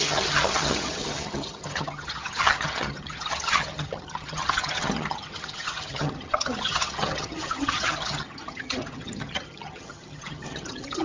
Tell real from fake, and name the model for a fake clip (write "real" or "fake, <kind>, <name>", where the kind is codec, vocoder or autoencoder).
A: fake, vocoder, HiFi-GAN